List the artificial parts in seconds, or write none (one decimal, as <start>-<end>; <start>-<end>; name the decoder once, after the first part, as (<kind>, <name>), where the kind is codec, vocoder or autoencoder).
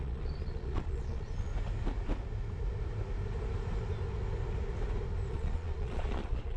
0.0-1.5 (vocoder, Vocos); 5.3-6.6